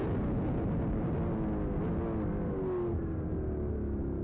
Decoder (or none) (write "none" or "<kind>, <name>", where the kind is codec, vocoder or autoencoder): none